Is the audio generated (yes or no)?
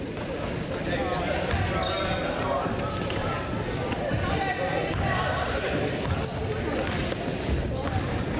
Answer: no